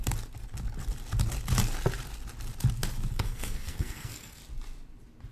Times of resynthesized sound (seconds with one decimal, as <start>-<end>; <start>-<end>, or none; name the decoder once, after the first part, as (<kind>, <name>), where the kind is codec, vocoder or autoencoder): 3.1-4.4 (codec, SNAC)